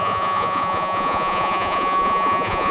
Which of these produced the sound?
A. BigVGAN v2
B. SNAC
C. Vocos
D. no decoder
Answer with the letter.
C